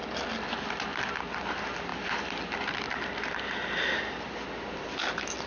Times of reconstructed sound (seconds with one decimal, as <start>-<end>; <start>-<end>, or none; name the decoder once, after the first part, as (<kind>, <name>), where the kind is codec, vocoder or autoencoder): none